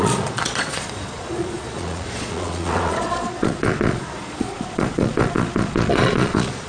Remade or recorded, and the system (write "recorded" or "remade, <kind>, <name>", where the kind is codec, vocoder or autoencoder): remade, vocoder, Vocos